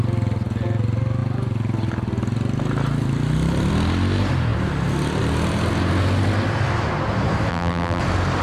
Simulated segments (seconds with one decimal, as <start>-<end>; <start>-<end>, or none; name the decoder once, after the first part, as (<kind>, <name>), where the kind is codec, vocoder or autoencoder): 7.5-8.0 (vocoder, BigVGAN v2)